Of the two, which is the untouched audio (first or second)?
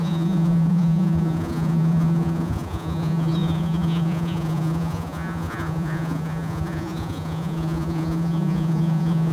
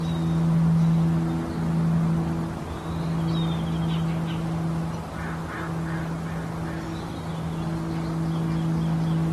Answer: second